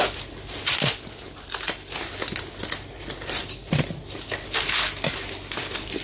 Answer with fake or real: real